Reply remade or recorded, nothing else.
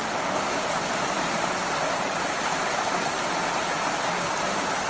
recorded